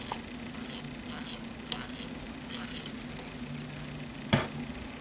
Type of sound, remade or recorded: recorded